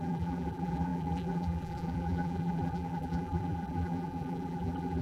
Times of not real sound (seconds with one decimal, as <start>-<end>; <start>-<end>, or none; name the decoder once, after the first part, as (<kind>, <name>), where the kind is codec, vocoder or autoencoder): 0.0-5.0 (vocoder, BigVGAN v2)